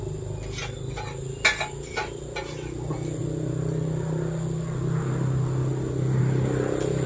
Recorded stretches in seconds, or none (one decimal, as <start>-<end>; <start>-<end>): 0.0-7.1